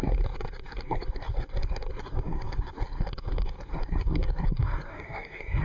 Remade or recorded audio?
remade